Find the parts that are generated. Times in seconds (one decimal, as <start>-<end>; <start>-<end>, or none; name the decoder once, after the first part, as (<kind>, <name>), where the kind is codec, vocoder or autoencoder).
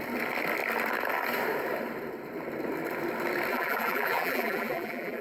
3.5-5.2 (vocoder, BigVGAN v2)